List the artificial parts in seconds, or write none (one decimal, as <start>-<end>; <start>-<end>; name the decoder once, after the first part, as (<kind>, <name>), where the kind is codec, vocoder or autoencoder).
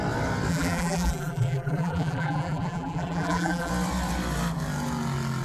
0.5-3.7 (vocoder, BigVGAN v2)